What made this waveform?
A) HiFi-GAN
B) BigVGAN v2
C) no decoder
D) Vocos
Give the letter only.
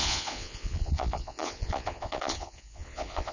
D